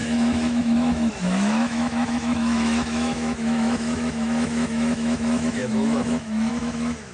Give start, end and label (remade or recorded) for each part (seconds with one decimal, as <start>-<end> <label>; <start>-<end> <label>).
0.0-7.1 remade